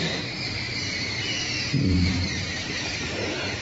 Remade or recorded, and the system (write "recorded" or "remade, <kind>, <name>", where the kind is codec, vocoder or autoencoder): remade, vocoder, BigVGAN v2